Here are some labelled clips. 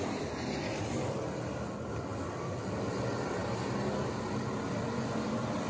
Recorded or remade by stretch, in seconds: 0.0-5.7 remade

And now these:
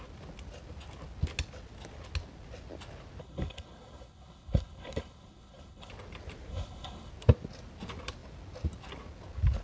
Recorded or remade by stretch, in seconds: 0.0-3.2 recorded; 3.2-5.9 remade; 5.9-6.5 recorded; 6.5-7.1 remade; 7.1-9.6 recorded